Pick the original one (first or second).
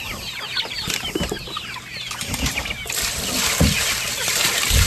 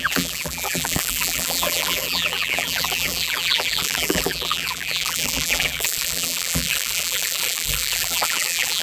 first